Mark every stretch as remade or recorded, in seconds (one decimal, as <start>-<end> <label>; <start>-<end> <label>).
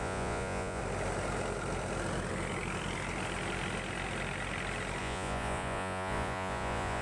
0.0-0.8 remade; 0.8-5.0 recorded; 5.0-7.0 remade